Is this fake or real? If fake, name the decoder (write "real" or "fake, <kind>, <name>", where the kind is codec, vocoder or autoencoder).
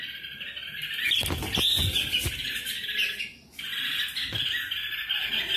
real